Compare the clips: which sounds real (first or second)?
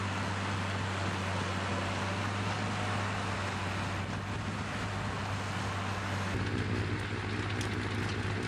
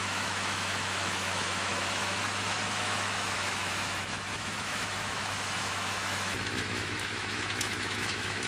first